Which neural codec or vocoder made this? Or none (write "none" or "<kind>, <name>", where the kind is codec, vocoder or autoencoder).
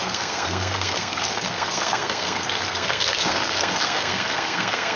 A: codec, SNAC